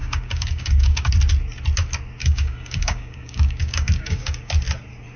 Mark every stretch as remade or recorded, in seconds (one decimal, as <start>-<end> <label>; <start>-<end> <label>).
0.0-1.1 remade; 1.1-2.2 recorded; 2.2-4.5 remade; 4.5-5.2 recorded

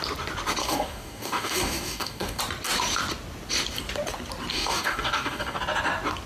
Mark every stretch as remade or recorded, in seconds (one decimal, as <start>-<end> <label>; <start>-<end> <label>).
0.0-0.6 recorded; 0.6-2.4 remade; 2.4-4.5 recorded; 4.5-5.6 remade; 5.6-6.3 recorded

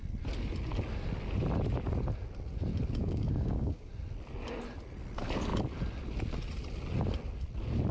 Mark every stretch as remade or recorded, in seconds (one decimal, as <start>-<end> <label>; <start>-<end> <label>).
0.0-3.0 recorded; 3.0-3.9 remade; 3.9-7.9 recorded

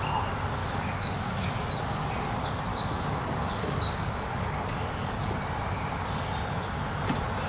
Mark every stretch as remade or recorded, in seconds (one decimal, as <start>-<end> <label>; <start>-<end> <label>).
0.0-0.6 recorded; 0.6-1.5 remade; 1.5-2.7 recorded; 2.7-5.4 remade; 5.4-7.5 recorded